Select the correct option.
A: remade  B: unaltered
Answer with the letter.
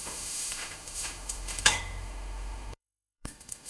A